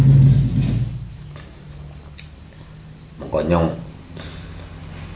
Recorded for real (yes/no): yes